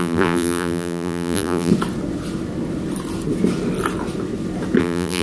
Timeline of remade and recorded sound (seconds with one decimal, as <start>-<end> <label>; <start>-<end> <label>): 0.0-1.7 remade; 1.7-4.8 recorded; 4.8-5.2 remade